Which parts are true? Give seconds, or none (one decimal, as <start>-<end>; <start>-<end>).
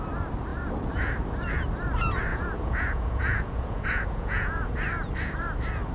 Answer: 0.0-2.3; 4.7-5.9